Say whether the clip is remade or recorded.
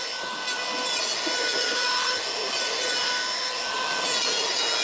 recorded